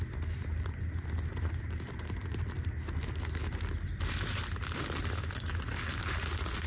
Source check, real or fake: real